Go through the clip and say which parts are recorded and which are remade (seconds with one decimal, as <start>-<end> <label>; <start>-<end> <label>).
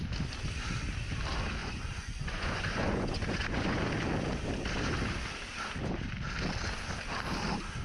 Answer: 0.0-1.6 recorded; 1.6-3.9 remade; 3.9-7.8 recorded